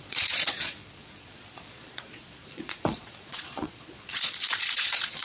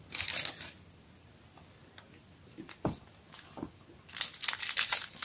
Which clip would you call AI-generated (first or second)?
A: first